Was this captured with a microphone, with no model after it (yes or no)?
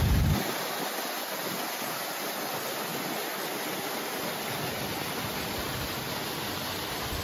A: yes